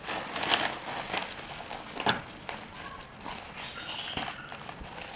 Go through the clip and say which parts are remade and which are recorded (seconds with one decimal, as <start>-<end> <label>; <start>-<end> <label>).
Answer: 0.0-5.2 recorded